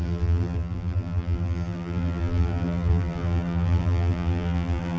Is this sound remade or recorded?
remade